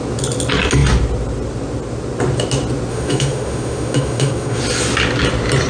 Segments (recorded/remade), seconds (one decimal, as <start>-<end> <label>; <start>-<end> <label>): 0.0-2.9 recorded; 2.9-4.6 remade; 4.6-5.7 recorded

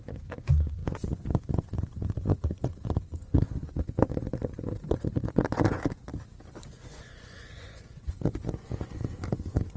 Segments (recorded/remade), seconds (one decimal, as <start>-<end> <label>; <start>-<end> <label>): 0.0-6.1 remade; 6.1-6.7 recorded; 6.7-9.8 remade

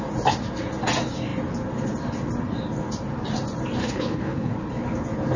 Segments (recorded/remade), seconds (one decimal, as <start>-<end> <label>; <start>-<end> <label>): 0.0-3.8 recorded; 3.8-4.5 remade; 4.5-5.4 recorded